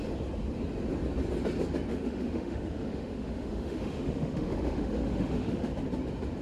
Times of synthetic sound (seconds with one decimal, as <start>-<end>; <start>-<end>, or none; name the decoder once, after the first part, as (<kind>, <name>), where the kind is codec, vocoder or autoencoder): 1.9-5.7 (autoencoder, DAC-VAE)